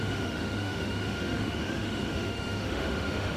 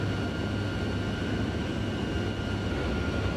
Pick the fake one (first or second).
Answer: first